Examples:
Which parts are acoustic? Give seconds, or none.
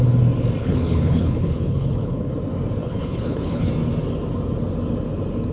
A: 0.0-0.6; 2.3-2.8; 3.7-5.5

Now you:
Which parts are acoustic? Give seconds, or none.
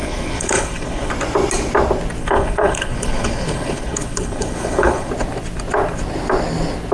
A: 1.1-2.2; 5.1-6.9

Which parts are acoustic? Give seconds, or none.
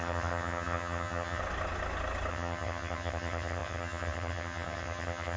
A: 1.4-2.3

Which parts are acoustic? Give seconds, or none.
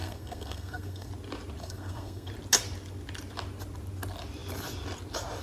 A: 1.1-1.6; 2.3-5.4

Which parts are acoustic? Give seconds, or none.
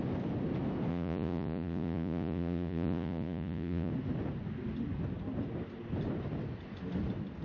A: 0.0-0.9; 3.9-7.4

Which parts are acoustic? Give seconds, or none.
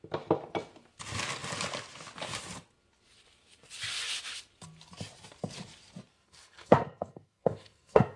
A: 0.0-6.1